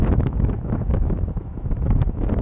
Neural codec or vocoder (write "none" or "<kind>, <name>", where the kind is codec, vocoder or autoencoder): autoencoder, DAC-VAE